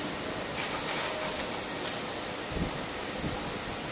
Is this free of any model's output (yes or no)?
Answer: yes